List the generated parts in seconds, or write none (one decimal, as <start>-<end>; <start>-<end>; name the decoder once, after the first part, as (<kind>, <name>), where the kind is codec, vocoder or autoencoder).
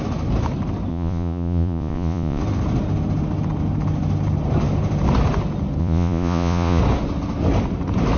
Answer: 0.9-2.4 (vocoder, Vocos); 5.8-6.8